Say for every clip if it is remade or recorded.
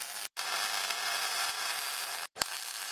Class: remade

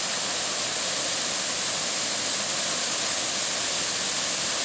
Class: recorded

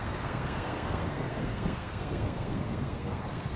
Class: remade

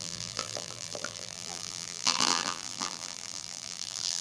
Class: remade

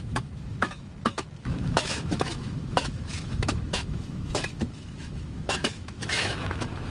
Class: remade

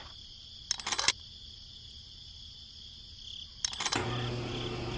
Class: recorded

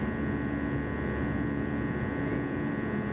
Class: remade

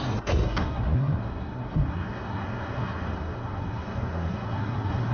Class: remade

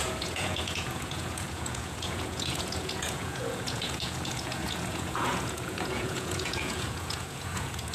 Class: remade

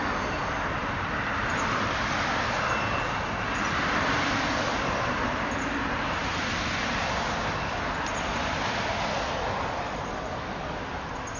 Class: recorded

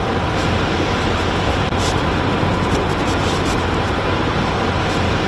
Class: remade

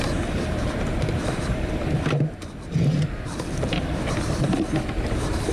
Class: remade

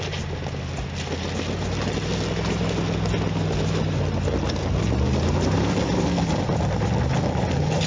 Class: recorded